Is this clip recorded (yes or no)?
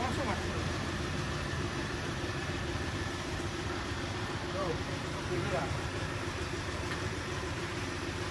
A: no